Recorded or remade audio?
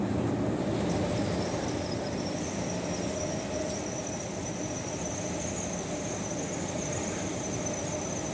recorded